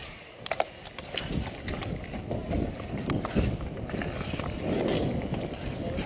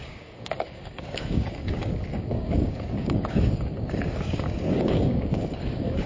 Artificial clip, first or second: second